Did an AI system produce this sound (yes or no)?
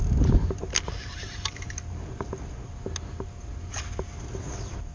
no